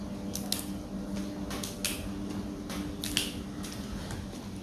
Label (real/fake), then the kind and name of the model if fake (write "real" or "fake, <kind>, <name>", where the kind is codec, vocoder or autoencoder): real